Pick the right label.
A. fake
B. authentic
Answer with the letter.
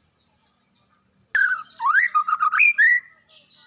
B